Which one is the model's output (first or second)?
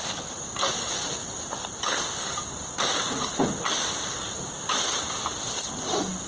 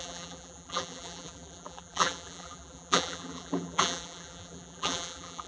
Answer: second